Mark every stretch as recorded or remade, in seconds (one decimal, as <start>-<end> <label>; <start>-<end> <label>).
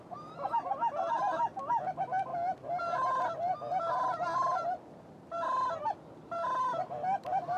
0.0-7.6 recorded